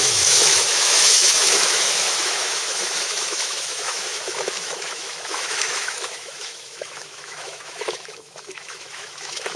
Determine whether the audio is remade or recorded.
remade